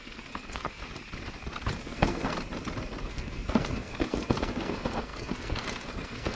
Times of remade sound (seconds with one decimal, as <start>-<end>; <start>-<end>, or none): 0.0-0.8; 1.8-2.3; 3.0-6.4